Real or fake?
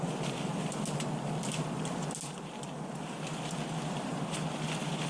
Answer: real